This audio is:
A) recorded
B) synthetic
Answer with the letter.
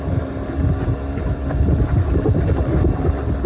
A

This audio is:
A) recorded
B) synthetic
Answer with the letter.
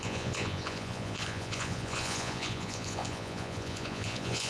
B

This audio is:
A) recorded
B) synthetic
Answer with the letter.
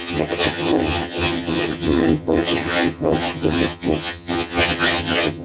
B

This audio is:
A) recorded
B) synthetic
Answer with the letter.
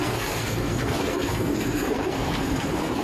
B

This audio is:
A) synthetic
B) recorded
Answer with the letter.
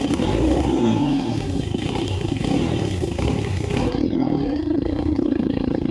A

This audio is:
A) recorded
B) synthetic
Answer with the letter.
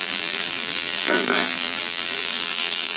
B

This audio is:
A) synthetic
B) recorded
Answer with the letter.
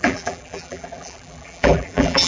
A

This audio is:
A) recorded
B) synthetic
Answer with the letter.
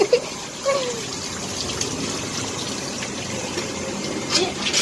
A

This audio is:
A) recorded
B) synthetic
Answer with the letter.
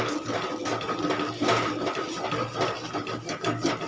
A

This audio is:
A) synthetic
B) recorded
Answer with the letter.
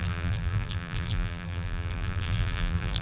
A